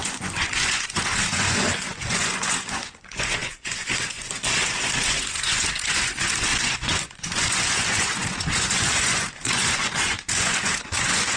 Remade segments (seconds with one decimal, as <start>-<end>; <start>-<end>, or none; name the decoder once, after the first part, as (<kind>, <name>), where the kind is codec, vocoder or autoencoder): 0.0-11.4 (vocoder, Vocos)